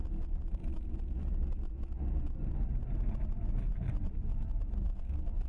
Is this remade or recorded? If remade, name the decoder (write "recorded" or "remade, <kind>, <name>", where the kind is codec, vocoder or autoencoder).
recorded